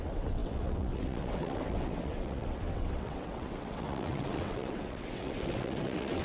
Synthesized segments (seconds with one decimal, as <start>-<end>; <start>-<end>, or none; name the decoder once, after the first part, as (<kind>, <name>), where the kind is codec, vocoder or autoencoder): 0.0-6.2 (vocoder, WaveNeXt)